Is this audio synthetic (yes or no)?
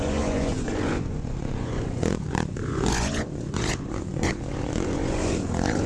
yes